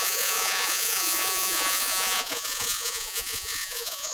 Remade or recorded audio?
remade